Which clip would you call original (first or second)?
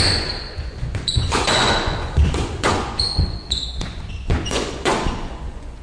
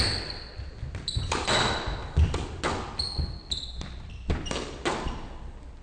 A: second